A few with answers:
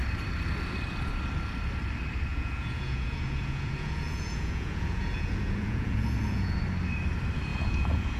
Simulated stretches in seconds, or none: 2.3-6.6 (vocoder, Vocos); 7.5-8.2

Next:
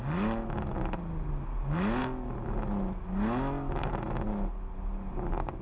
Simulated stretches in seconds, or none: none